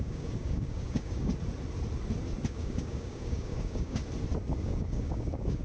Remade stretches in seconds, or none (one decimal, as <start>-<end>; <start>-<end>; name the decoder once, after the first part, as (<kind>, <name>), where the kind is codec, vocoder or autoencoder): 0.0-1.3 (codec, DAC); 2.5-4.0; 4.6-5.6